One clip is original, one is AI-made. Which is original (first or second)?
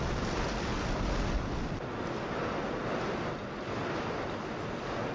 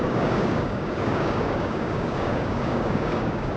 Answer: first